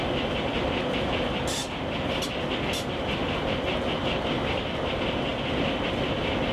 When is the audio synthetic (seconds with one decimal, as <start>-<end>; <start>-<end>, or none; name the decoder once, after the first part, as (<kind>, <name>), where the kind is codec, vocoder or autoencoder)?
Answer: none